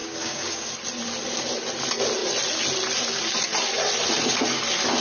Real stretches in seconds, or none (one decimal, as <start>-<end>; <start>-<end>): 0.7-5.0